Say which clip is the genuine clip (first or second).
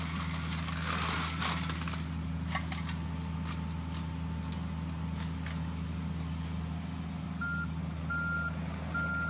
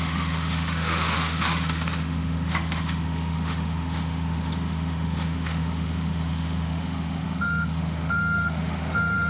first